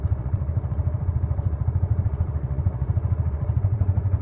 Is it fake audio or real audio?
fake